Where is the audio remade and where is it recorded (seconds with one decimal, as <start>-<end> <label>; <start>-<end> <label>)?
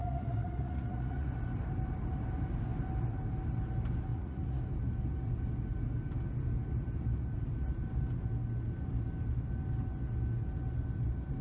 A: 0.0-1.3 remade; 1.3-4.1 recorded; 4.1-4.6 remade; 4.6-11.4 recorded